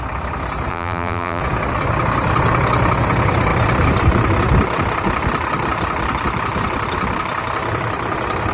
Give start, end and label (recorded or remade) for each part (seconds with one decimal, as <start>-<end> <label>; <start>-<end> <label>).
0.0-0.7 recorded; 0.7-1.4 remade; 1.4-8.5 recorded